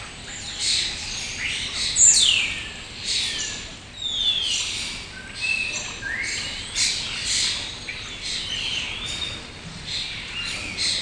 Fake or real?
real